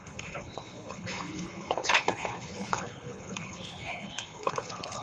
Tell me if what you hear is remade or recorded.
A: remade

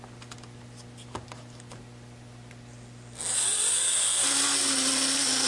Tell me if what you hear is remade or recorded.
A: recorded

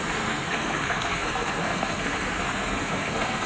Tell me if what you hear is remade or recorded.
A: remade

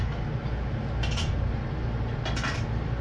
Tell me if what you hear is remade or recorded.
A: recorded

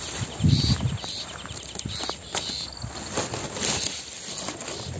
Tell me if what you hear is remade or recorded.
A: recorded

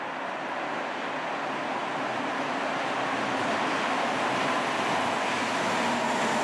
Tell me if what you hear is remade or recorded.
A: recorded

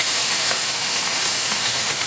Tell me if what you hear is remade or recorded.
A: remade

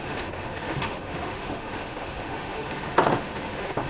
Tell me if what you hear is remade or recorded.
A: remade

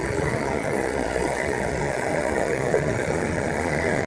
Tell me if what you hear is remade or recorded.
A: remade